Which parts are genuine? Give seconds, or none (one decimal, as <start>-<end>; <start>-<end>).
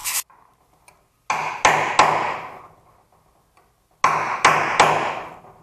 0.0-5.6